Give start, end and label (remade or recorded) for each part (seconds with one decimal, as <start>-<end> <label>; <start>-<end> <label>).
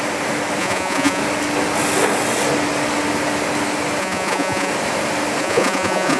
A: 0.0-0.6 recorded; 0.6-1.2 remade; 1.2-4.0 recorded; 4.0-4.7 remade; 4.7-5.4 recorded; 5.4-6.2 remade